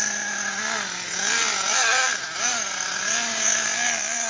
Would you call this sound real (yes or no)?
yes